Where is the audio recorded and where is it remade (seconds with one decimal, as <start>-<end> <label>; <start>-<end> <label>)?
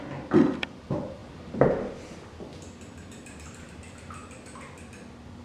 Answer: 0.0-5.4 recorded